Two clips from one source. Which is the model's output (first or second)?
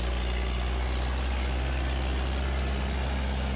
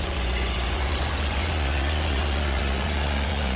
second